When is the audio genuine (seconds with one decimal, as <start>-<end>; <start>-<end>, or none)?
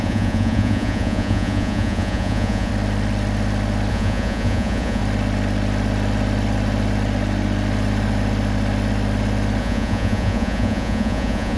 2.7-3.9; 5.0-9.6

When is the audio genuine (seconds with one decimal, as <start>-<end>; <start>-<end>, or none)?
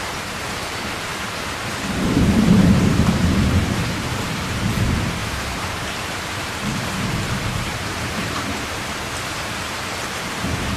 none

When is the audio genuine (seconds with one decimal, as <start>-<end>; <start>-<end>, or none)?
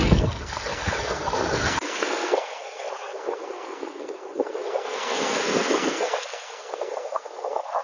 none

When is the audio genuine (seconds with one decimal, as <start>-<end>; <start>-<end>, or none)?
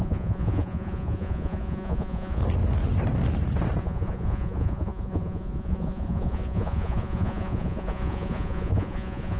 2.4-3.8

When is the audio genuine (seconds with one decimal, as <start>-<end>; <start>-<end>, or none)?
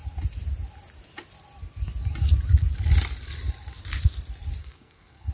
0.0-4.6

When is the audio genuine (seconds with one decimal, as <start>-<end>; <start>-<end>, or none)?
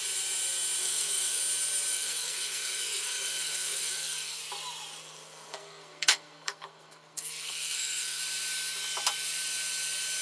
0.0-0.8; 1.4-1.9; 4.4-5.0; 8.2-10.2